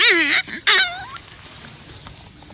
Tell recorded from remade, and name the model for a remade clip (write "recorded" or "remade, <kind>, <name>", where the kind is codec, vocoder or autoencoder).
recorded